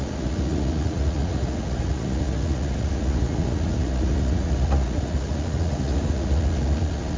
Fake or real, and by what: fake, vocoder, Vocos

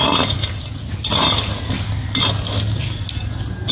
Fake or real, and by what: real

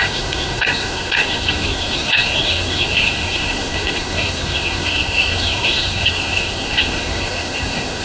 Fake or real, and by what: fake, codec, SNAC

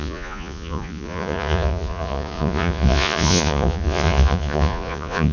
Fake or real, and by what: fake, vocoder, Vocos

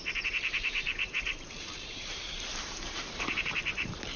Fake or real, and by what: fake, vocoder, BigVGAN v2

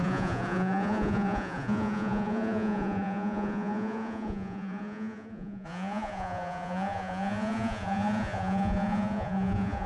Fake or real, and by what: fake, vocoder, Vocos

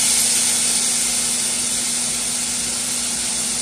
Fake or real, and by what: real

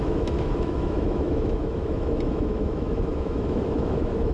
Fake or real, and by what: fake, autoencoder, DAC-VAE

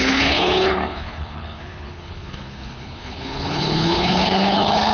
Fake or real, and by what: fake, codec, HILCodec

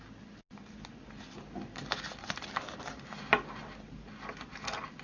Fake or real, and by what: real